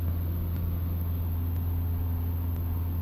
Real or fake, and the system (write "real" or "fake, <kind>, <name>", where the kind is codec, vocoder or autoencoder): real